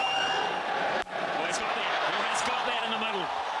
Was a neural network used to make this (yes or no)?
no